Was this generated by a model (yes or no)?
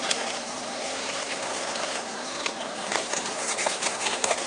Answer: yes